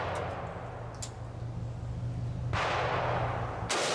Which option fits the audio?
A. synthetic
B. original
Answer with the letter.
B